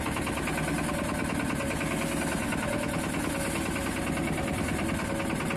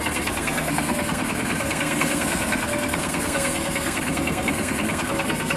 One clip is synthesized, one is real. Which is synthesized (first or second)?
second